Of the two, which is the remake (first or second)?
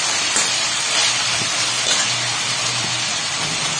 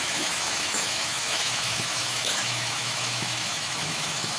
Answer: second